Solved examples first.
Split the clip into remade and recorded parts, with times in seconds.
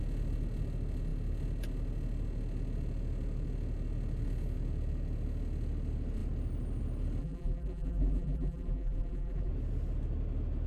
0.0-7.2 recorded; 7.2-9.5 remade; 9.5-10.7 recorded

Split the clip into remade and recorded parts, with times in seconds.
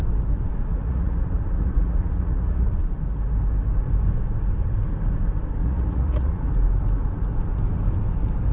0.0-0.7 recorded; 0.7-2.8 remade; 2.8-5.6 recorded; 5.6-6.5 remade; 6.5-8.5 recorded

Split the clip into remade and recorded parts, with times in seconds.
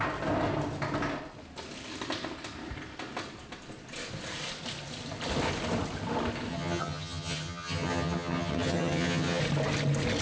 0.0-6.5 recorded; 6.5-9.4 remade; 9.4-10.2 recorded